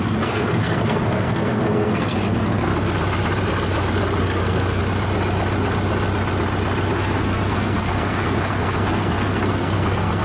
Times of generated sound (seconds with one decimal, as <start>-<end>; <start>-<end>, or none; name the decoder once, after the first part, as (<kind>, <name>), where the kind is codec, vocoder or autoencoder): 0.0-2.7 (codec, SNAC); 4.2-4.8; 7.0-10.2

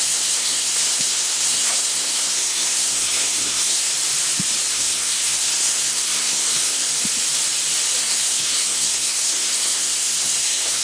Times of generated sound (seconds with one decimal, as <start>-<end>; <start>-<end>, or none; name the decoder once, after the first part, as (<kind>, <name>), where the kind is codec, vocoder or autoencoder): 0.0-3.9 (codec, SNAC); 4.7-6.9; 8.0-10.8